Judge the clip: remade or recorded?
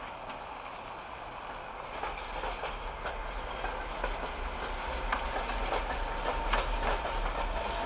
recorded